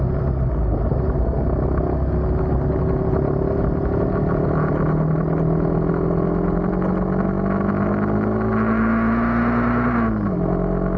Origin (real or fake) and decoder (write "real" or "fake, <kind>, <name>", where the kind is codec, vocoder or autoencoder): real